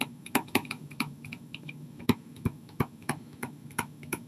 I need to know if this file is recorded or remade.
remade